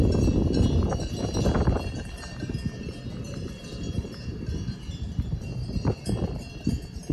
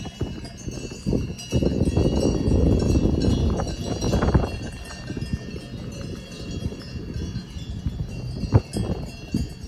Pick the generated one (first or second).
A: first